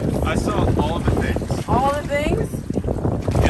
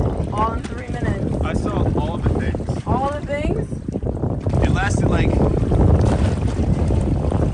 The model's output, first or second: second